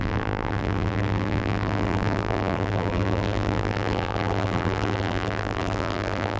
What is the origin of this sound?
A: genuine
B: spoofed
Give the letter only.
B